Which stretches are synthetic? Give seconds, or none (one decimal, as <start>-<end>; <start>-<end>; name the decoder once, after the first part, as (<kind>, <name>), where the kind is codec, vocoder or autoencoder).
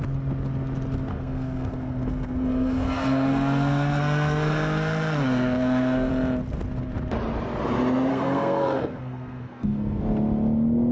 1.1-6.1 (codec, SNAC); 8.1-10.0